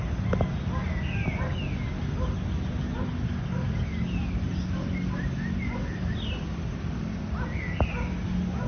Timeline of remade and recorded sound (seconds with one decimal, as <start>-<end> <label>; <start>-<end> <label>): 0.0-8.7 recorded